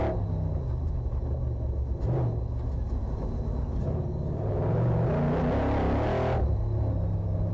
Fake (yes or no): no